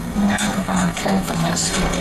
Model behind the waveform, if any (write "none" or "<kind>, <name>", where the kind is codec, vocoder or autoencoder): codec, SNAC